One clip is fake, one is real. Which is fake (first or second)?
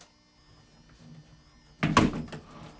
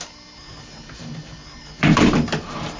second